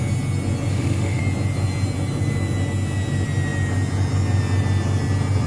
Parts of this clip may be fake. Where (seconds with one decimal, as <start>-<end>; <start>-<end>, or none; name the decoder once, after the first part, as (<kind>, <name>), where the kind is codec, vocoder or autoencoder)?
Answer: 0.7-1.2 (autoencoder, DAC-VAE)